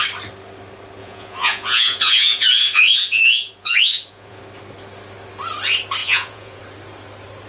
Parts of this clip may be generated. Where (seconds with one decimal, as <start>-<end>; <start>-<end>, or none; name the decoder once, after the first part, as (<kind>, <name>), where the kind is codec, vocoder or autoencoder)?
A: 1.0-4.4 (vocoder, Vocos); 6.0-6.6